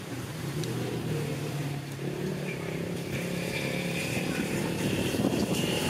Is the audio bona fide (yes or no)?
no